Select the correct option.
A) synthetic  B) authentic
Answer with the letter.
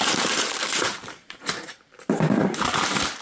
A